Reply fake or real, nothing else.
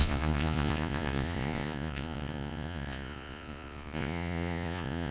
fake